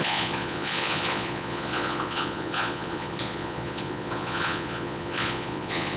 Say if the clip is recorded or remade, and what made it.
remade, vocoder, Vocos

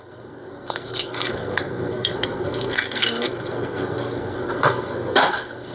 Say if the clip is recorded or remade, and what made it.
remade, codec, SNAC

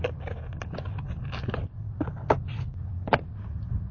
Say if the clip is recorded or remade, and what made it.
recorded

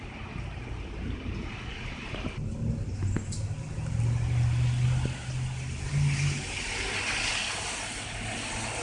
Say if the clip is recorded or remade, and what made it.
recorded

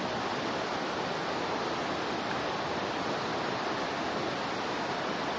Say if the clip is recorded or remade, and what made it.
recorded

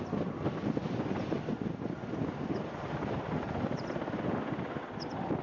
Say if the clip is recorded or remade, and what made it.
recorded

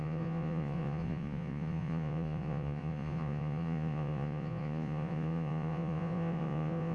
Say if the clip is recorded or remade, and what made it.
remade, vocoder, Vocos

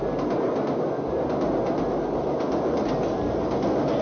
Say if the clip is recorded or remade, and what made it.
recorded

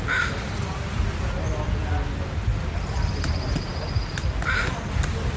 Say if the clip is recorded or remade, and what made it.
recorded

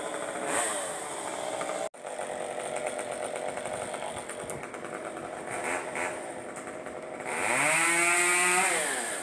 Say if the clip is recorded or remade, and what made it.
recorded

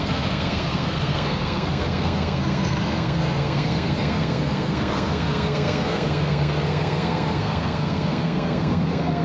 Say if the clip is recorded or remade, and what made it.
remade, codec, SNAC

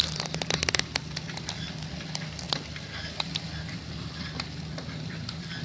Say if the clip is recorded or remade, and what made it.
recorded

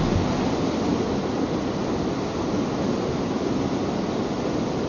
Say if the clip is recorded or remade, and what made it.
recorded